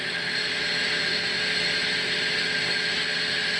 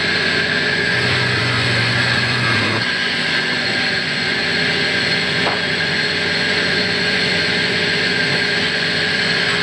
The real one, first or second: first